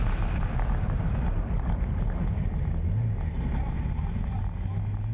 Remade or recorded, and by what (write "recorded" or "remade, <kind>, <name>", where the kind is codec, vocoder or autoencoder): recorded